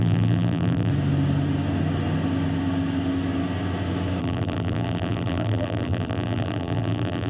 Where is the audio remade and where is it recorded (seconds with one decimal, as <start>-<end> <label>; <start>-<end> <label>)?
0.0-0.9 remade; 0.9-4.2 recorded; 4.2-7.3 remade